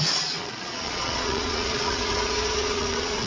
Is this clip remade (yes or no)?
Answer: yes